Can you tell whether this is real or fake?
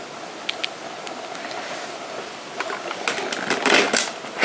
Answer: real